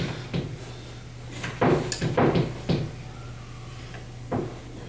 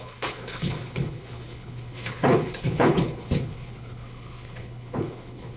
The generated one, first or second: second